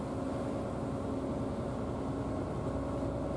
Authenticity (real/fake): real